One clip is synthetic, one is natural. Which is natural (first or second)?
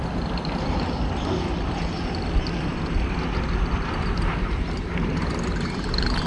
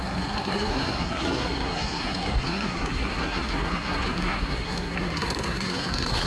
first